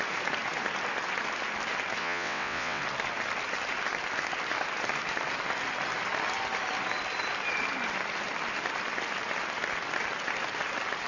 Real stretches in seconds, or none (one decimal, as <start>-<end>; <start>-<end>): 0.0-2.0; 2.8-11.1